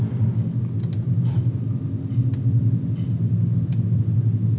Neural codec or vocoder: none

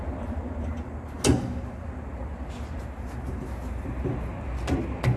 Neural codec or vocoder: none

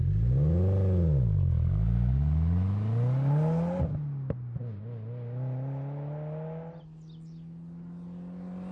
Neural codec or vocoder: none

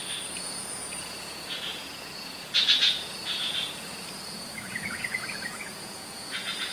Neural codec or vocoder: vocoder, Vocos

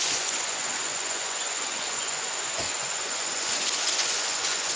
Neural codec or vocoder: vocoder, Vocos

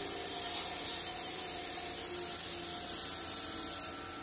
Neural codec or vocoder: none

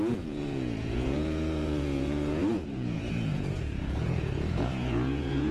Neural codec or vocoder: vocoder, Vocos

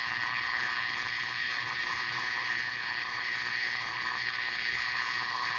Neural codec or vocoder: codec, HILCodec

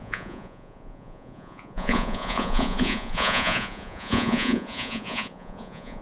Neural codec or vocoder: vocoder, Vocos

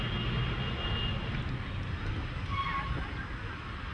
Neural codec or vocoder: none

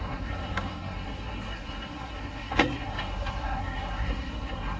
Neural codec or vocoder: codec, SNAC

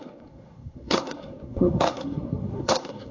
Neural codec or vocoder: codec, SNAC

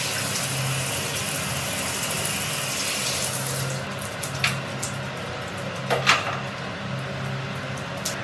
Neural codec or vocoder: none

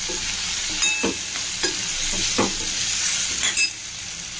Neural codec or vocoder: none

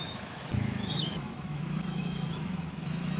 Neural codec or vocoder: autoencoder, DAC-VAE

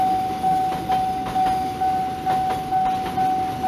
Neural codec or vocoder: none